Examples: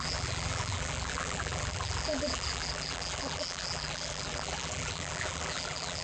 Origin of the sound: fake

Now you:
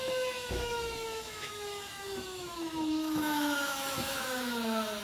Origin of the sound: fake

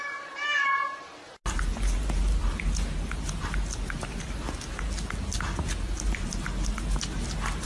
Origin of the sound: real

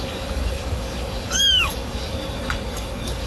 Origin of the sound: fake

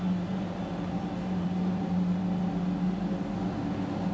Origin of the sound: real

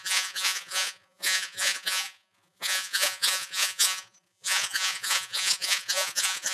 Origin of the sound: fake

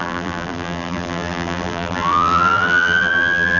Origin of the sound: fake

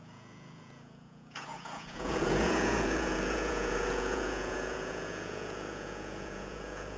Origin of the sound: fake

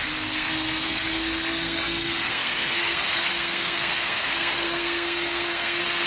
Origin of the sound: fake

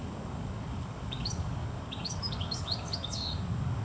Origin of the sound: fake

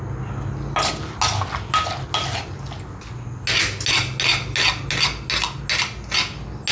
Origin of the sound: real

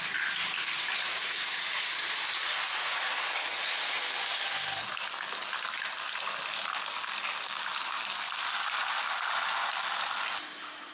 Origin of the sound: real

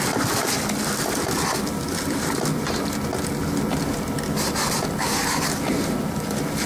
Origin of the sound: real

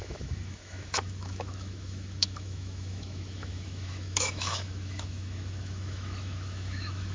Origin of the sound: fake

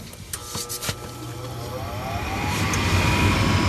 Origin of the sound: real